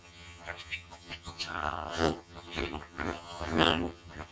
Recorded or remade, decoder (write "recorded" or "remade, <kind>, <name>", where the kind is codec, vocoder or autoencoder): remade, vocoder, HiFi-GAN